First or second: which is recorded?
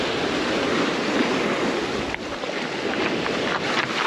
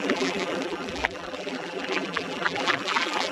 first